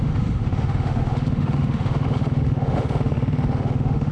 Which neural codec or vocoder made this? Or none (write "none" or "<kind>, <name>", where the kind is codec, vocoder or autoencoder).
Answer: autoencoder, DAC-VAE